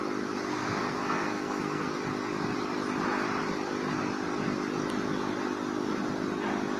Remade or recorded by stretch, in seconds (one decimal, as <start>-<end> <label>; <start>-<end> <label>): 0.0-0.5 recorded; 0.5-1.9 remade; 1.9-6.8 recorded